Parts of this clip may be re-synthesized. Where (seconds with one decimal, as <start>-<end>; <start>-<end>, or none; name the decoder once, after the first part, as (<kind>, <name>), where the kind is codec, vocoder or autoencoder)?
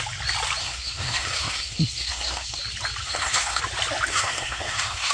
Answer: 0.6-2.6 (codec, SNAC); 3.0-3.6; 4.1-5.1